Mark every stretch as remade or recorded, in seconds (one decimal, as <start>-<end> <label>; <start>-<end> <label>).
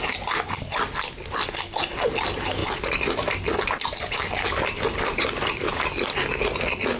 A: 0.0-2.6 recorded; 2.6-5.7 remade; 5.7-7.0 recorded